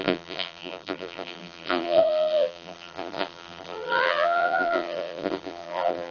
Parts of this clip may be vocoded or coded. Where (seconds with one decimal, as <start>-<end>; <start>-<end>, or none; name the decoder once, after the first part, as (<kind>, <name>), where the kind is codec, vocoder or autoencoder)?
0.0-6.1 (vocoder, BigVGAN v2)